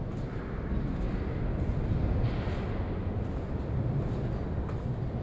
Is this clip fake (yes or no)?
no